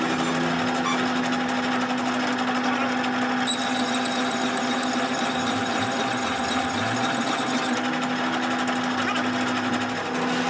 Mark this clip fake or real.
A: real